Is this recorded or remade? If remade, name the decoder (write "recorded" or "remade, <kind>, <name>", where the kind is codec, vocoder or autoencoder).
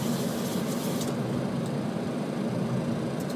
recorded